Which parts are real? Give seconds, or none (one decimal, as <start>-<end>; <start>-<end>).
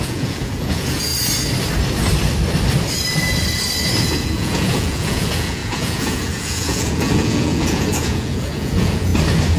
1.1-4.0; 9.1-9.6